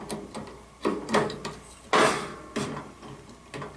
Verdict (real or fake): real